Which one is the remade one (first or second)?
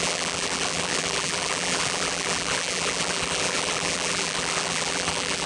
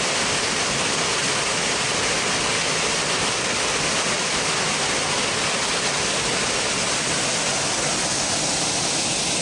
first